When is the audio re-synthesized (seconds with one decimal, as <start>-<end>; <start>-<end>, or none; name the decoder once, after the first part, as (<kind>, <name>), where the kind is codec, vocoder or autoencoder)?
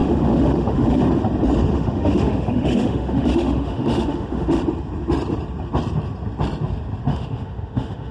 0.0-1.0 (autoencoder, DAC-VAE); 1.7-4.6; 7.1-8.1